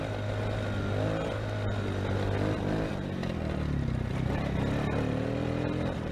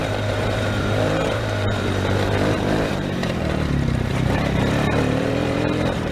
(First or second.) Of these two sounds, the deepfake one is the second